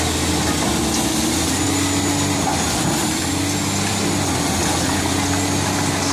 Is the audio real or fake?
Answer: real